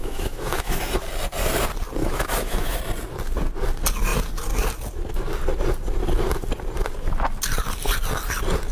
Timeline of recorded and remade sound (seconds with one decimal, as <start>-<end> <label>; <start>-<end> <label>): 0.0-0.8 remade; 0.8-2.0 recorded; 2.0-2.8 remade; 2.8-8.7 recorded